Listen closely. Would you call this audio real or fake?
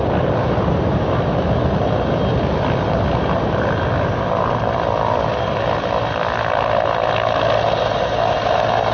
real